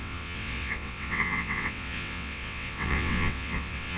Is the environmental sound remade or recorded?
remade